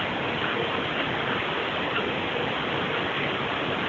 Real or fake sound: real